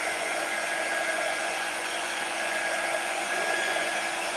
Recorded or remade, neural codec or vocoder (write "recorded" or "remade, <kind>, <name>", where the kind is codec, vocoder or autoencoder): remade, vocoder, Vocos